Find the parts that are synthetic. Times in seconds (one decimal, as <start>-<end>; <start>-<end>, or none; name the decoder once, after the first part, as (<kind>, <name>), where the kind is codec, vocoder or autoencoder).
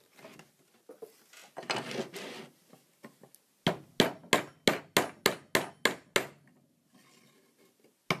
none